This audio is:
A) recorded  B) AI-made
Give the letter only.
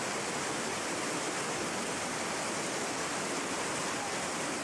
A